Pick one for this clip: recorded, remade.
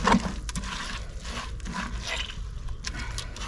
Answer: recorded